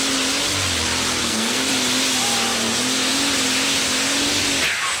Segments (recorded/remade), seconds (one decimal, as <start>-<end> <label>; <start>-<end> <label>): 0.0-1.2 recorded; 1.2-1.7 remade; 1.7-5.0 recorded